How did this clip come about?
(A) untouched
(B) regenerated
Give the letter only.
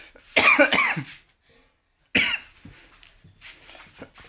A